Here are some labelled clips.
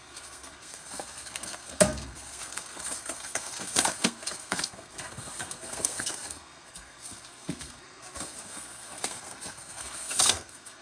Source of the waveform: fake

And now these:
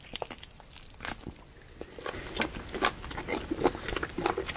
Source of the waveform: real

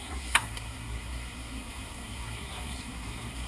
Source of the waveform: fake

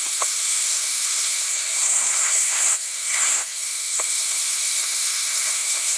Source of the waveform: fake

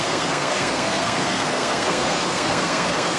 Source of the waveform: fake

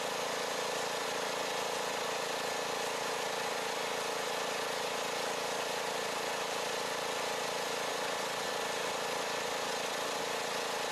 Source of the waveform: real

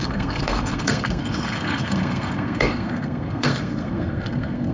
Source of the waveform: fake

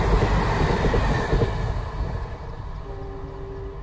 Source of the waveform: real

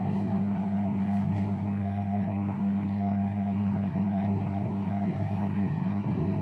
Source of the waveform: fake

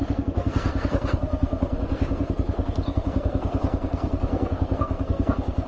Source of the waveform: fake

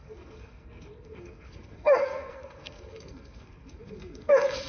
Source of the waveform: fake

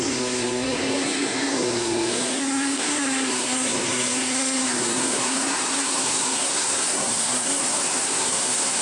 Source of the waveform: fake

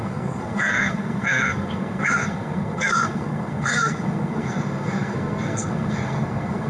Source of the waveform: fake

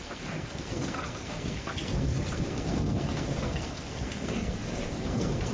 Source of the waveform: fake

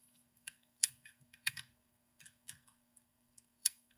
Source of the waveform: fake